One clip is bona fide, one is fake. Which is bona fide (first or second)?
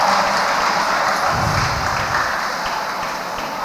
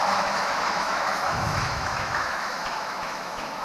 first